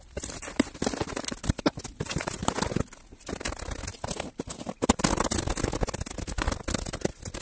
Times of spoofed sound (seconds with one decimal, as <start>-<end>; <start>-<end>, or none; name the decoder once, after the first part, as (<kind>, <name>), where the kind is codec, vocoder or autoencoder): none

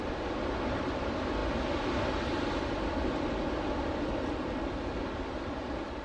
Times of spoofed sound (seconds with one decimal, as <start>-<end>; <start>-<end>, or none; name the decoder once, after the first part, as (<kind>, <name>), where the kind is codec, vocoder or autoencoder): none

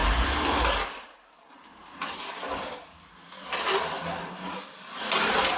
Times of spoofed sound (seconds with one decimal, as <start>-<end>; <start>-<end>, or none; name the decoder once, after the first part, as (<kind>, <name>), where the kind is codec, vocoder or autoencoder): none

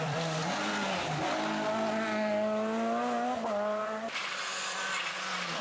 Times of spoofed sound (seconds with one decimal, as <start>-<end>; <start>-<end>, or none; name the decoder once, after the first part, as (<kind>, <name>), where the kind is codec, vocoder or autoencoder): 0.0-0.4 (vocoder, BigVGAN v2); 3.8-4.2

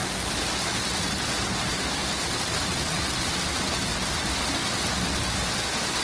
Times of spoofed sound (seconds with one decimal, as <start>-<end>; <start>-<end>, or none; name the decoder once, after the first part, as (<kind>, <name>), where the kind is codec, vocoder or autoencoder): none